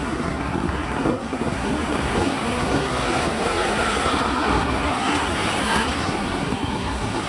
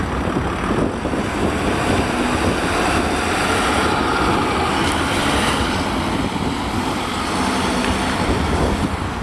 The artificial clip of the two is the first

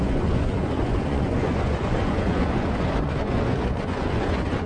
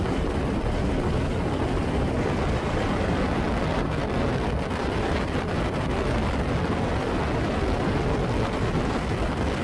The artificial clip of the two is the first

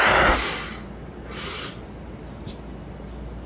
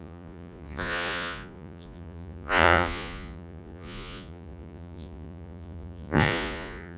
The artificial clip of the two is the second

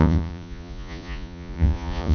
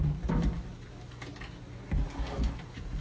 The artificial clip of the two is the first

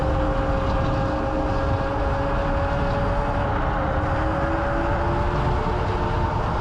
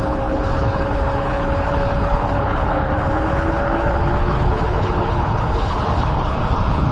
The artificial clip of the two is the second